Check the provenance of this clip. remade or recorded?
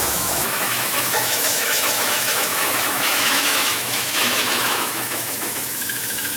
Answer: remade